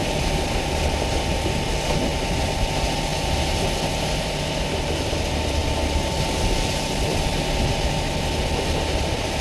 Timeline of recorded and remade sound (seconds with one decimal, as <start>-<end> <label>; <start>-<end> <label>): 0.0-9.4 recorded

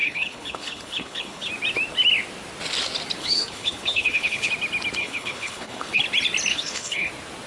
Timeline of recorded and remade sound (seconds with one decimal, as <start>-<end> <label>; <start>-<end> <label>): 0.0-1.5 remade; 1.5-3.2 recorded; 3.2-4.5 remade; 4.5-5.0 recorded; 5.0-6.0 remade; 6.0-6.5 recorded; 6.5-7.1 remade; 7.1-7.5 recorded